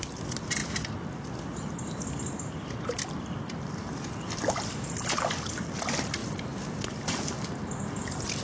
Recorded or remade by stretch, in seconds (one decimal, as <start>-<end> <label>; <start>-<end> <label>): 0.0-8.4 remade